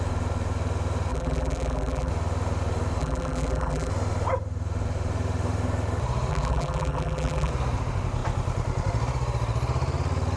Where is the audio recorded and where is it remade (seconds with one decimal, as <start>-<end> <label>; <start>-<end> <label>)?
0.0-1.1 recorded; 1.1-2.1 remade; 2.1-3.0 recorded; 3.0-3.9 remade; 3.9-6.3 recorded; 6.3-7.5 remade; 7.5-10.4 recorded